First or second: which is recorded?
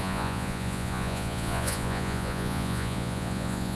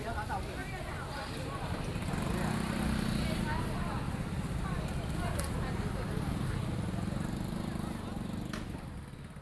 second